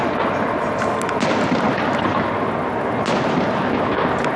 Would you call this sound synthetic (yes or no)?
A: no